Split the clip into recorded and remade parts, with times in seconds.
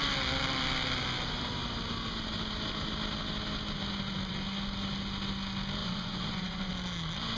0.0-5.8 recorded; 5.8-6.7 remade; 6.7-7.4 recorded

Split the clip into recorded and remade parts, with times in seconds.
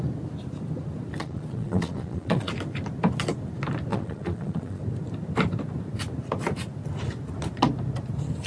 0.0-1.2 recorded; 1.2-2.5 remade; 2.5-3.9 recorded; 3.9-4.8 remade; 4.8-8.5 recorded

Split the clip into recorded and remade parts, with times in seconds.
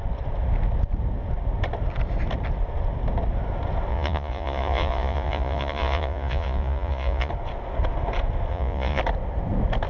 0.0-3.9 recorded; 3.9-7.3 remade; 7.3-8.5 recorded; 8.5-9.0 remade; 9.0-9.9 recorded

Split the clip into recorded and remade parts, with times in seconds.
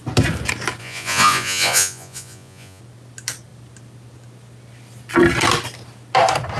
0.0-0.8 recorded; 0.8-2.8 remade; 2.8-6.6 recorded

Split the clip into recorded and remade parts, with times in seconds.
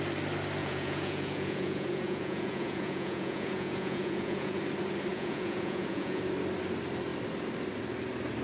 0.0-0.6 recorded; 0.6-4.6 remade; 4.6-5.1 recorded; 5.1-6.2 remade; 6.2-8.4 recorded